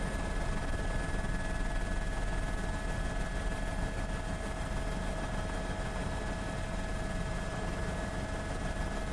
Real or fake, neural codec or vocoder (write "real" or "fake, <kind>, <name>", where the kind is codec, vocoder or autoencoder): real